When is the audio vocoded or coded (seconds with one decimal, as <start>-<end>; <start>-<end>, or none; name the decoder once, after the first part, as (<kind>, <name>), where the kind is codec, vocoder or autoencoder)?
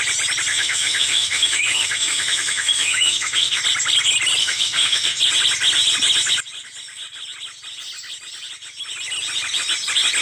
0.5-3.6 (autoencoder, DAC-VAE); 4.4-5.2